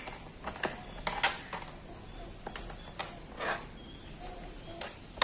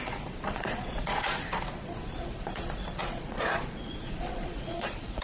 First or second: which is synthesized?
second